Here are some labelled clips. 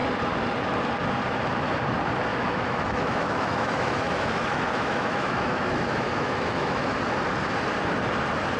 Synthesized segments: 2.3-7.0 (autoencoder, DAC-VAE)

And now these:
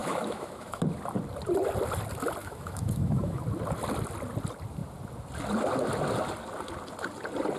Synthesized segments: 0.0-0.8 (autoencoder, DAC-VAE); 2.4-3.4

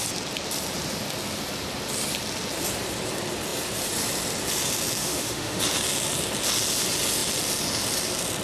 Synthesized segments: 5.0-5.6 (autoencoder, DAC-VAE)

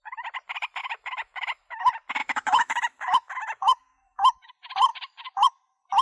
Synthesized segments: 0.8-1.8 (autoencoder, DAC-VAE); 2.2-4.5